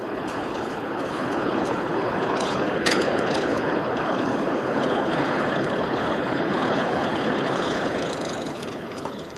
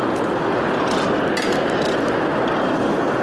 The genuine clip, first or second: second